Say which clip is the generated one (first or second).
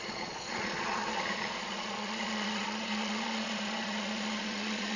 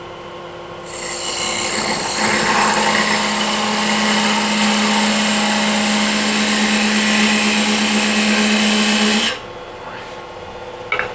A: first